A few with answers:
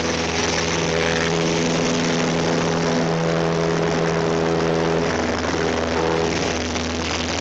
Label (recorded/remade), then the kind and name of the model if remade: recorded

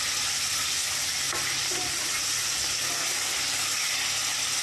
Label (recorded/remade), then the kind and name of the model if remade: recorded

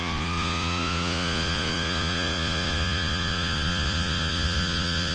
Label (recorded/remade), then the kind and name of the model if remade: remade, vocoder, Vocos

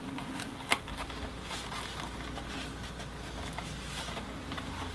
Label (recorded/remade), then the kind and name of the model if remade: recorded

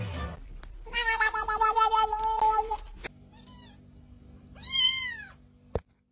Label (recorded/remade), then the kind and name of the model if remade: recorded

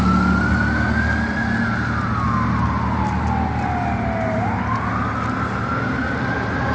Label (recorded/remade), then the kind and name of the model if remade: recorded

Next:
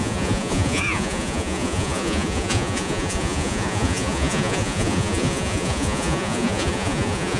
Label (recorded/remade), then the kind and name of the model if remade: remade, vocoder, Vocos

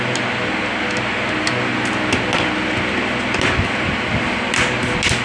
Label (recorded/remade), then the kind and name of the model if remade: recorded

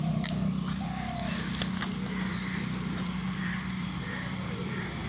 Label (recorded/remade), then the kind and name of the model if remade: remade, vocoder, BigVGAN v2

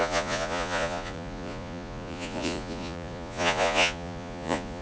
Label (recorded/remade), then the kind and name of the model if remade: remade, vocoder, Vocos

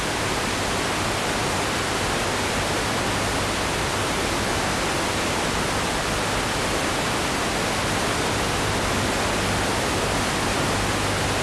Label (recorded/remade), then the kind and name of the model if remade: recorded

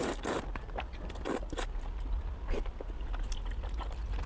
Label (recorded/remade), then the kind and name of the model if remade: recorded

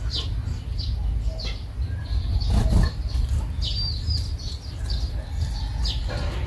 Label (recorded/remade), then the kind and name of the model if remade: recorded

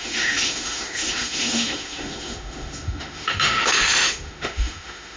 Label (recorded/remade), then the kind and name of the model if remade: remade, autoencoder, DAC-VAE